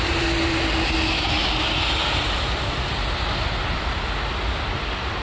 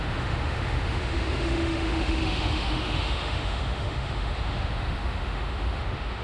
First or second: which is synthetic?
second